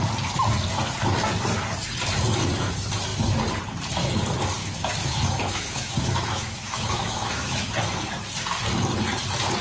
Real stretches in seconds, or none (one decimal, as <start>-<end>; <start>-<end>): 0.0-4.6; 7.7-9.6